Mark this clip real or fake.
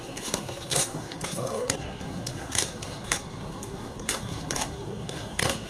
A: fake